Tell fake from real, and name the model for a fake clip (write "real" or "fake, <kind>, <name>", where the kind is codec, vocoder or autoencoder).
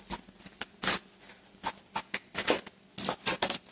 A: real